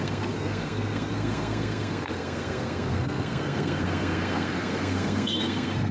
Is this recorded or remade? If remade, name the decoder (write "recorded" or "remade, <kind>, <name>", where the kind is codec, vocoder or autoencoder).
remade, codec, SNAC